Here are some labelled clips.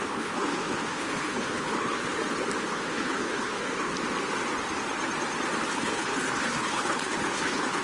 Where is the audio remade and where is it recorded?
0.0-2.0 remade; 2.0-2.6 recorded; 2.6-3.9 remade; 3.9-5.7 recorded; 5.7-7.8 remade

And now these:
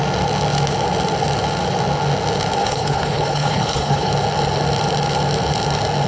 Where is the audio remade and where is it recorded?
0.0-2.6 recorded; 2.6-4.1 remade; 4.1-6.1 recorded

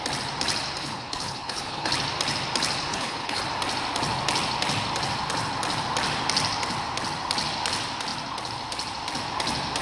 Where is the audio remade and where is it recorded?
0.0-0.8 recorded; 0.8-1.9 remade; 1.9-2.9 recorded; 2.9-3.4 remade; 3.4-9.8 recorded